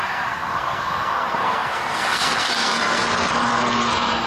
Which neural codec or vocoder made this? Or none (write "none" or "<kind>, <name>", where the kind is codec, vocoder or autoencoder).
codec, SNAC